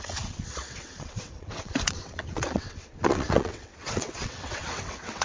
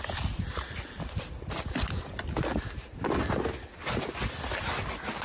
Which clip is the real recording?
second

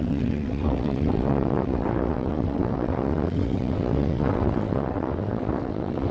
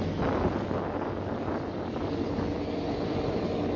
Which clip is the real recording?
second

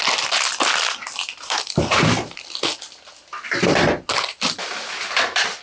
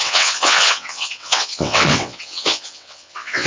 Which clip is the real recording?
first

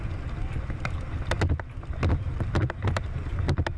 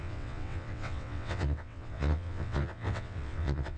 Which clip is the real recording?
first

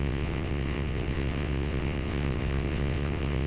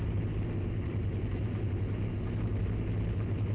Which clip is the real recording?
second